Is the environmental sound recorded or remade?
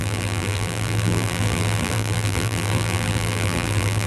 remade